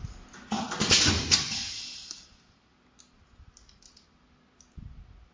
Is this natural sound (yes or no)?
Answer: yes